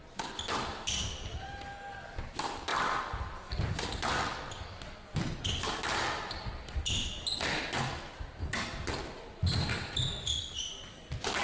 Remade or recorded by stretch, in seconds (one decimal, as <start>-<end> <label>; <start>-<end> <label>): 0.0-11.4 recorded